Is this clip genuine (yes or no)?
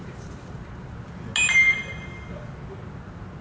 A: yes